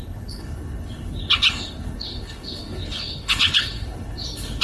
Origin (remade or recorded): remade